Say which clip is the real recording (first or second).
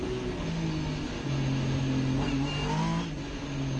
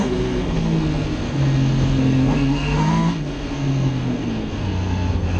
first